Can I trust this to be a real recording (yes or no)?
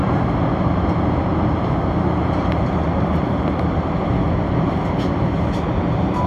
yes